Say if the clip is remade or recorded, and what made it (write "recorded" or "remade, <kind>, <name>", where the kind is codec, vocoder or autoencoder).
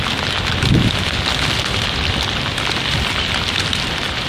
recorded